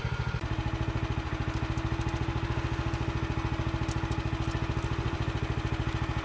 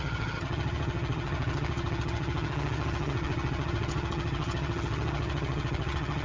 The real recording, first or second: first